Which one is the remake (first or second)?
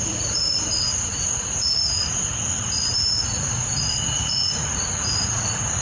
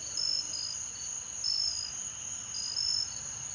first